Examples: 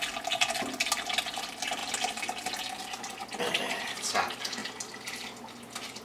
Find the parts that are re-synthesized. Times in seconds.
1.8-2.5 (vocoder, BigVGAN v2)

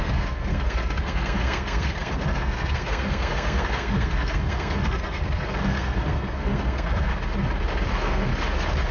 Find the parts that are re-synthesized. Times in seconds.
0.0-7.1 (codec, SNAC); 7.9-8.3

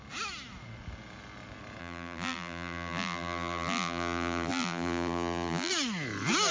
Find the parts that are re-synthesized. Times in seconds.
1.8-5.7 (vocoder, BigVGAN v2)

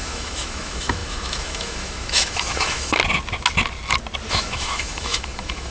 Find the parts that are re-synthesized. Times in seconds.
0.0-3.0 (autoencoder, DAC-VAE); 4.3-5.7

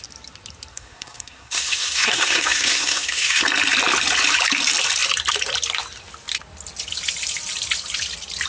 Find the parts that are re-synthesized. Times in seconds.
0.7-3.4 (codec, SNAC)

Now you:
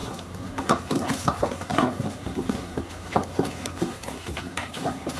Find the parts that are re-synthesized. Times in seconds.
0.0-5.2 (codec, SNAC)

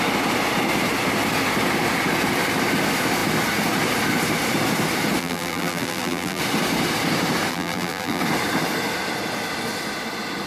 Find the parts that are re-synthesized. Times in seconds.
5.2-6.4 (vocoder, BigVGAN v2); 7.5-8.2